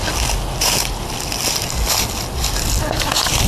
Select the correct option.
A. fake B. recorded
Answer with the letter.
B